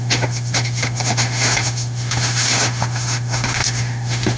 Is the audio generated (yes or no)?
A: yes